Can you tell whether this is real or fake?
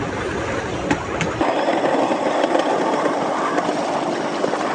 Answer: real